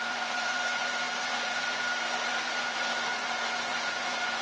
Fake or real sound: fake